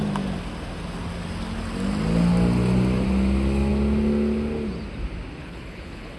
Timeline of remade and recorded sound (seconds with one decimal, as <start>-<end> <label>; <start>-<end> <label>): 0.0-5.4 recorded; 5.4-6.2 remade